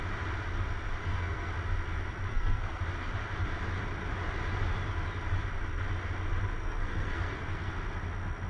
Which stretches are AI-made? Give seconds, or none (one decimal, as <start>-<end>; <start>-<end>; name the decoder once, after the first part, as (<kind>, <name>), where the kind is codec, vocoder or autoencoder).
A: 1.0-1.5 (codec, SNAC); 2.3-2.8; 6.6-7.7